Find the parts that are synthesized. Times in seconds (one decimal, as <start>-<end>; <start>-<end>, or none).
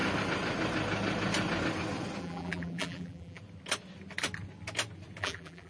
2.2-3.4; 5.2-5.7